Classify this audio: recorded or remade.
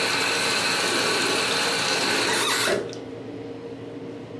recorded